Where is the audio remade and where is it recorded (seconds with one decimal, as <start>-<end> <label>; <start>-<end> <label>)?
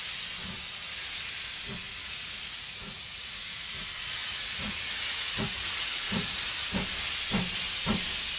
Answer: 0.0-2.0 recorded; 2.0-3.8 remade; 3.8-4.2 recorded; 4.2-6.4 remade; 6.4-8.4 recorded